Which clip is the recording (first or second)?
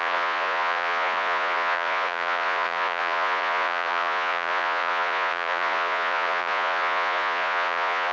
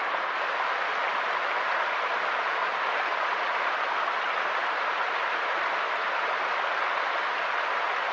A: second